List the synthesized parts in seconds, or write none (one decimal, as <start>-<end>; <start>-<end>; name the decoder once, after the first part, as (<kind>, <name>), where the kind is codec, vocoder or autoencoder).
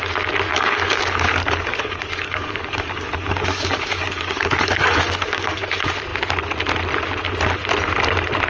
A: 0.5-5.6 (codec, DAC)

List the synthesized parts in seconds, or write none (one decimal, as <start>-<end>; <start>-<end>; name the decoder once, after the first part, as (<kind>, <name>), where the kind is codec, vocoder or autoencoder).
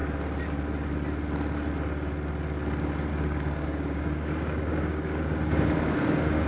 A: 3.1-6.5 (codec, DAC)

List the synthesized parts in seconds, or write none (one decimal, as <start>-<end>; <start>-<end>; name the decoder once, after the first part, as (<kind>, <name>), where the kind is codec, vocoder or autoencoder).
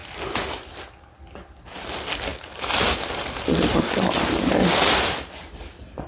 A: none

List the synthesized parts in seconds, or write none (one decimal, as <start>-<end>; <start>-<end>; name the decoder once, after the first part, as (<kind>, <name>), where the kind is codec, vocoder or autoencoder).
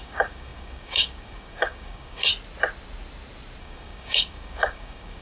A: 0.0-2.3 (codec, DAC); 3.6-5.2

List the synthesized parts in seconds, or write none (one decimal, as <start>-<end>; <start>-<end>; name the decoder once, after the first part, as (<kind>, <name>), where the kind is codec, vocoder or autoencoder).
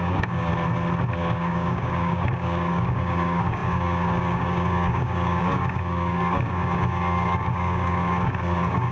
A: 0.0-0.5 (codec, DAC); 1.2-8.9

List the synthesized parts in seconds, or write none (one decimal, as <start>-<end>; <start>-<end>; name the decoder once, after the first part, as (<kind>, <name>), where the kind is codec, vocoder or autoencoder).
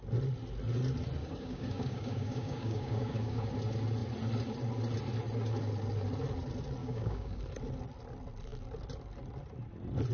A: 1.2-3.5 (codec, DAC); 6.8-7.4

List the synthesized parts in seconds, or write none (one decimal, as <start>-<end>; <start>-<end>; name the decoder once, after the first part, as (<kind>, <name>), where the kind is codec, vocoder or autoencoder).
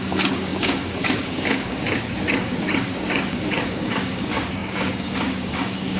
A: 0.0-6.0 (codec, DAC)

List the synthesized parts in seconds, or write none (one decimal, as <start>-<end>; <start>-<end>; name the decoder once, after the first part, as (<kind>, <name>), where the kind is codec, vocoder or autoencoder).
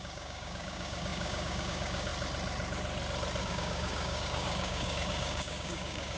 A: 0.0-2.1 (codec, DAC); 3.4-6.2